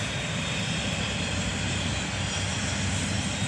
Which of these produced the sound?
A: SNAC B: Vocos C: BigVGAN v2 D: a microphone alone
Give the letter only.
D